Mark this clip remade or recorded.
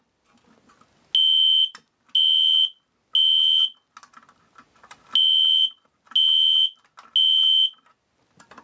recorded